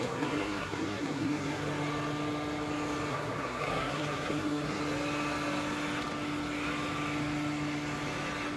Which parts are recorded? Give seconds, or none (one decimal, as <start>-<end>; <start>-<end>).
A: 1.6-3.1; 4.8-8.6

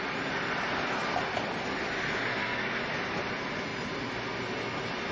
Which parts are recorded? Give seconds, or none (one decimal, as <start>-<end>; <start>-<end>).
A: 0.0-2.3; 2.8-5.1